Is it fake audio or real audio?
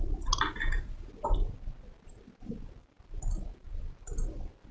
real